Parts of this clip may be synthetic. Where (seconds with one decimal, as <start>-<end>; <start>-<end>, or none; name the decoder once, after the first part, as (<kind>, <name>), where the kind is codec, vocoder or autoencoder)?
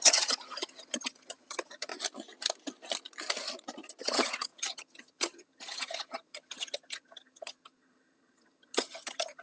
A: 0.0-1.9 (vocoder, HiFi-GAN); 4.0-9.4